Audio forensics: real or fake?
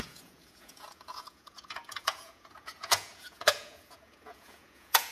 fake